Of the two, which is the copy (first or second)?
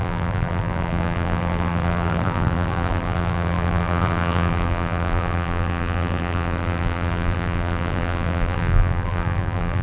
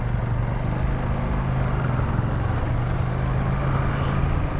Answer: first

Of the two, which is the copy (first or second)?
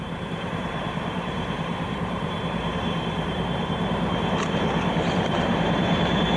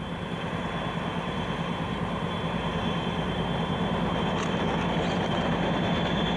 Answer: first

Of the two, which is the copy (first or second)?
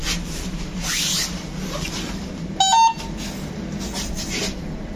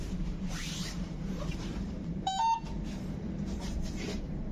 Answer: second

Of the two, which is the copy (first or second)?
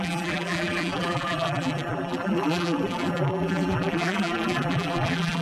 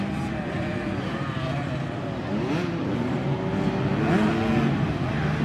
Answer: first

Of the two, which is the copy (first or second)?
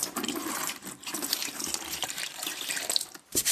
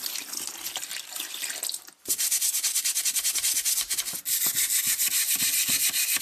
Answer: first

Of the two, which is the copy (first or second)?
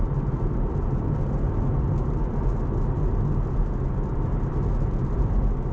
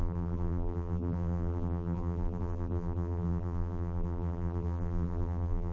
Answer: second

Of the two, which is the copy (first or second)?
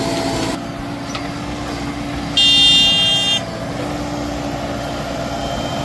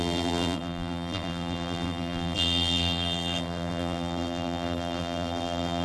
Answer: second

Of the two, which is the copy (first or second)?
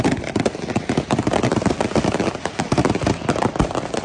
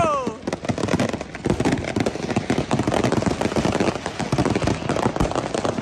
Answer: first